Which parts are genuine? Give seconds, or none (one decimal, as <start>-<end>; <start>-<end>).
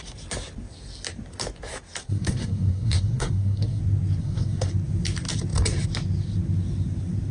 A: 0.0-2.0; 3.8-4.2; 4.7-7.3